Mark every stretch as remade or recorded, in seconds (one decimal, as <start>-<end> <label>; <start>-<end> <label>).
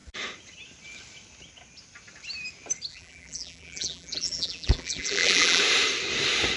0.0-2.9 recorded; 2.9-5.6 remade; 5.6-6.6 recorded